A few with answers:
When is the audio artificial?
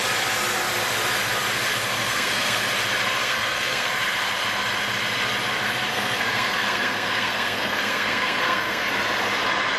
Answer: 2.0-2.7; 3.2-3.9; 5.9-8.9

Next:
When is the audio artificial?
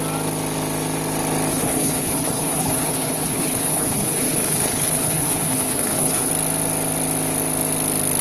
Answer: 1.5-6.3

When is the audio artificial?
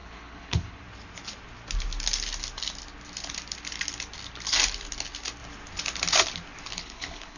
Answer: 0.0-0.8; 6.7-7.4